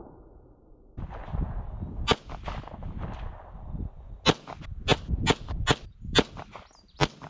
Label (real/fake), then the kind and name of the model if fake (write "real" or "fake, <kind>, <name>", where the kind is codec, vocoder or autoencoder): real